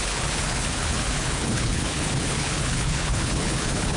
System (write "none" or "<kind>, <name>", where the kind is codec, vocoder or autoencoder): codec, HILCodec